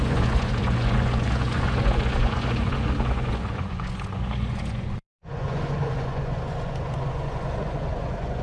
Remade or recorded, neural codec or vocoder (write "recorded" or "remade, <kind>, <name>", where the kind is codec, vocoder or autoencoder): remade, vocoder, Vocos